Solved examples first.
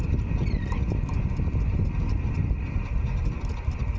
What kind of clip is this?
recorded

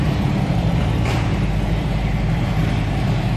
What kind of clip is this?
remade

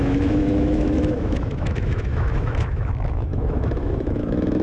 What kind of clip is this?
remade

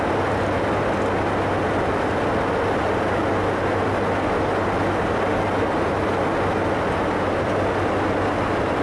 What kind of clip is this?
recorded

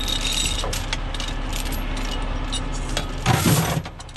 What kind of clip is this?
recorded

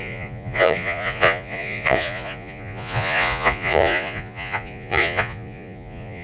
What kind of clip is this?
remade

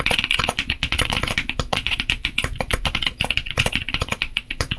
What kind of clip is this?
remade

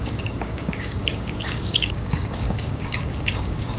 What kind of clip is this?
remade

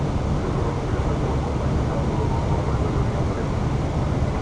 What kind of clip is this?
recorded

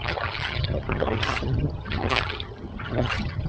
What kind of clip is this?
remade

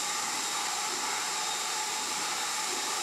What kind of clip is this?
remade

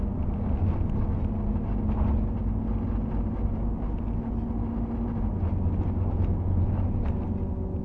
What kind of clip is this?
recorded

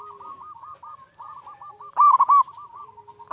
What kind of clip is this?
recorded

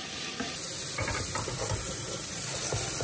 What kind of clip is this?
recorded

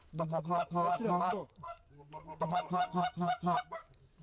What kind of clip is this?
remade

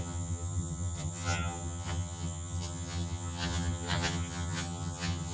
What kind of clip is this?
remade